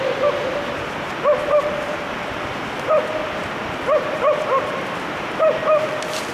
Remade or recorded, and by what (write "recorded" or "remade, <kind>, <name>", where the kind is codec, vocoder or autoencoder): recorded